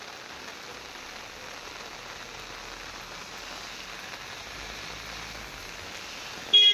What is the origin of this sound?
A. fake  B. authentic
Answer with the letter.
B